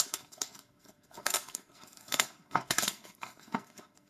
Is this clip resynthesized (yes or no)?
yes